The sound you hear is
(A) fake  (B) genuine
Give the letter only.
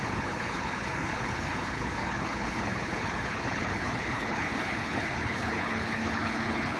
A